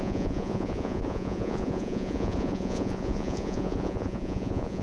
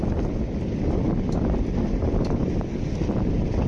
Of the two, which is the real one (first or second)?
second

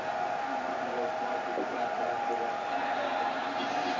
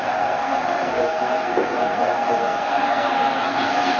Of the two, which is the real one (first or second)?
first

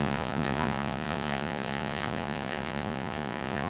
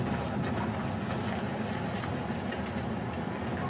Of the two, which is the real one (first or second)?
second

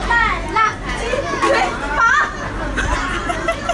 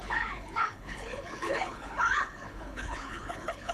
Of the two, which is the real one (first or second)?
first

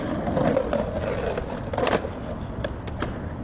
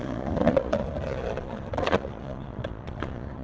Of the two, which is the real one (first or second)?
first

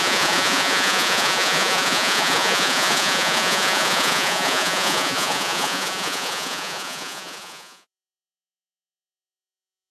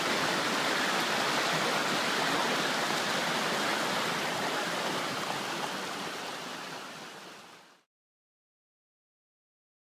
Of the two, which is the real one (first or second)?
second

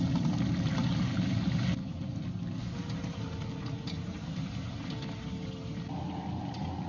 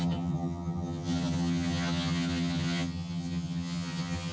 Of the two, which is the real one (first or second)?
first